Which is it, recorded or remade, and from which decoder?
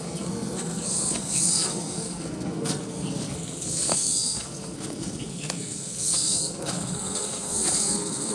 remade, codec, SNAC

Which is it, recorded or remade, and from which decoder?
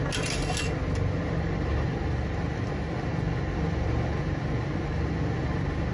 recorded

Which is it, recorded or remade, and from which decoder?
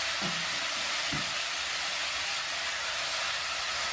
recorded